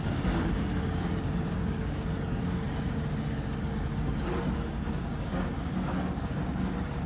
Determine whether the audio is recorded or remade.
remade